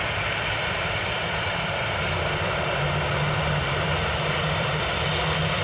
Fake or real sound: fake